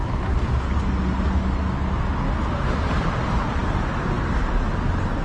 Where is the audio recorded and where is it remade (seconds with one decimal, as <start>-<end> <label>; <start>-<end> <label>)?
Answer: 0.0-5.2 recorded